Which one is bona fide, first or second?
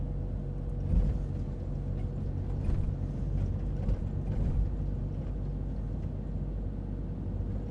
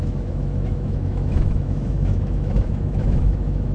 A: first